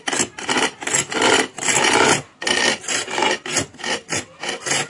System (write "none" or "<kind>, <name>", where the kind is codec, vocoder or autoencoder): none